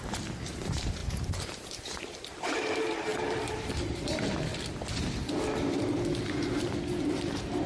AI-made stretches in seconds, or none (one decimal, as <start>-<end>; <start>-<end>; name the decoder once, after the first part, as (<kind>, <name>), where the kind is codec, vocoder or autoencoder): 0.0-4.5 (vocoder, BigVGAN v2); 6.3-7.7